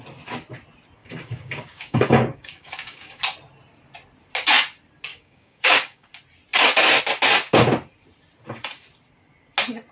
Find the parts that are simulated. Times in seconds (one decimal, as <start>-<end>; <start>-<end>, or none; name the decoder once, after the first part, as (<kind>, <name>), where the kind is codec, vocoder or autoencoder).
1.0-3.2 (codec, DAC); 5.1-6.1